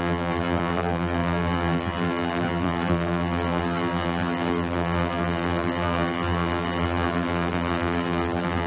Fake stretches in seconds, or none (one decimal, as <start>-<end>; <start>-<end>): 0.0-8.7